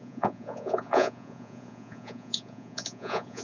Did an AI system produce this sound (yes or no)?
yes